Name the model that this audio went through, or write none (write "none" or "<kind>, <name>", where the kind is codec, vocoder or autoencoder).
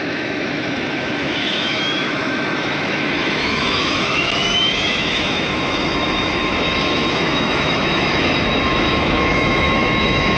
autoencoder, DAC-VAE